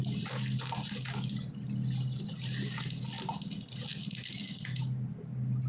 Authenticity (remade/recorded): recorded